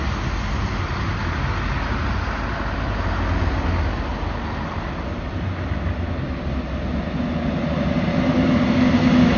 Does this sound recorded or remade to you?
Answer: recorded